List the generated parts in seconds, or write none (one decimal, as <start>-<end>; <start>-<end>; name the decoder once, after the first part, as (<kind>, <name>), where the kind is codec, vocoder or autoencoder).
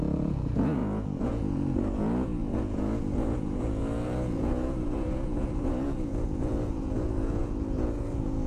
0.0-8.5 (vocoder, Vocos)